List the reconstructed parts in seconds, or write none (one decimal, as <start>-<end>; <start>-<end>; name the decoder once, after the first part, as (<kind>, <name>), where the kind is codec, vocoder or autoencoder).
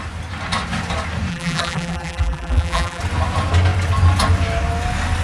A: 1.3-3.0 (vocoder, BigVGAN v2)